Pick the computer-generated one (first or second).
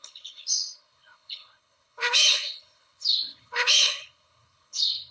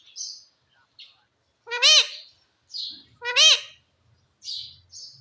first